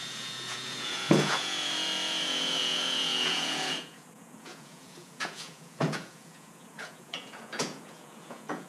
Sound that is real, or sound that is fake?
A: fake